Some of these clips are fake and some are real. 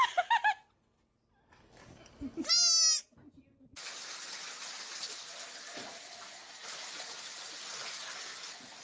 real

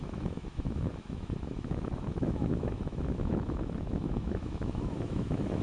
fake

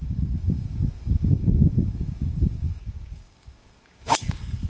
fake